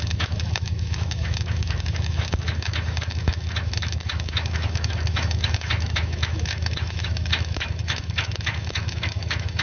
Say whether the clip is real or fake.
fake